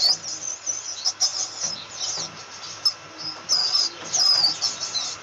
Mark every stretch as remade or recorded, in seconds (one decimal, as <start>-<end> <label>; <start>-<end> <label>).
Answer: 0.0-5.2 recorded